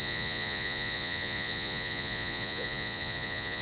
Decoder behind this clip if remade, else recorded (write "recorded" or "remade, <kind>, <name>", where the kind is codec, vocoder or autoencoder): remade, vocoder, Vocos